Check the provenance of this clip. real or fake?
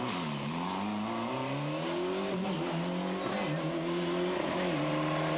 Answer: real